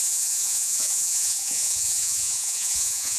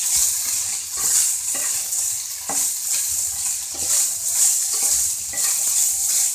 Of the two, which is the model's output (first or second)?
first